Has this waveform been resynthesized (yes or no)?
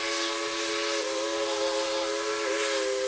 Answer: no